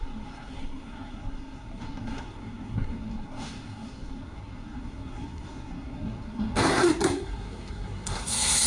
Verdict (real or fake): fake